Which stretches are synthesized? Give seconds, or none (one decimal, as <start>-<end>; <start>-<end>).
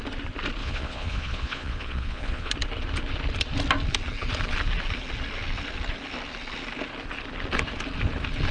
0.6-2.5